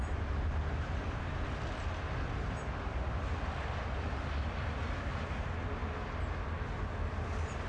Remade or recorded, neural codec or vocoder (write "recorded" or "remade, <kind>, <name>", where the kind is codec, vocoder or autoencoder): recorded